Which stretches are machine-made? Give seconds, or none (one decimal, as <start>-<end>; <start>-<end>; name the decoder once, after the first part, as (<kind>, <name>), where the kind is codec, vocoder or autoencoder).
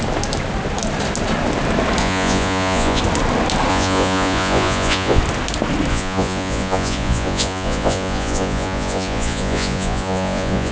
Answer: 2.0-3.0 (vocoder, Vocos); 3.7-5.2; 5.9-10.7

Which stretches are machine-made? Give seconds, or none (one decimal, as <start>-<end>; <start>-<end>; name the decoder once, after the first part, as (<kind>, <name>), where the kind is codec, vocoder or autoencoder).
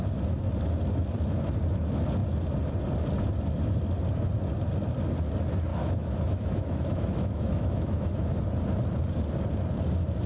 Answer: 5.7-8.4 (autoencoder, DAC-VAE)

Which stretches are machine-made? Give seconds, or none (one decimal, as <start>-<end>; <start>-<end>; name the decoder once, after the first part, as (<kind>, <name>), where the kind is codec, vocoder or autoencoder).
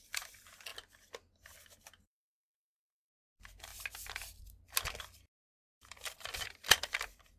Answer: 0.0-0.7 (vocoder, BigVGAN v2); 3.1-3.7; 5.0-7.4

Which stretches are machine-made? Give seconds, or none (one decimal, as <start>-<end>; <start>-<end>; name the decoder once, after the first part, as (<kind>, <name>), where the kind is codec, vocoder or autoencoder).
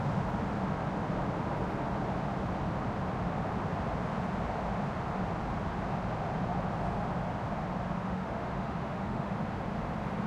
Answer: 8.0-9.3 (autoencoder, DAC-VAE)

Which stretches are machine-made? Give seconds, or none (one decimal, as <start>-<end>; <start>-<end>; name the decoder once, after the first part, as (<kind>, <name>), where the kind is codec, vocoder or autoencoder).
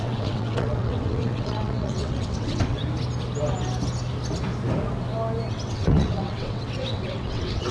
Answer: 0.0-2.8 (vocoder, WaveNeXt); 5.5-7.7